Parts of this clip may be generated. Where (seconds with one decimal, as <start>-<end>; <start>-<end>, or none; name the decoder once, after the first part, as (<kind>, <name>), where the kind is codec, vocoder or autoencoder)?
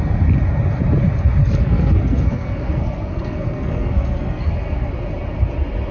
1.4-4.9 (codec, SNAC)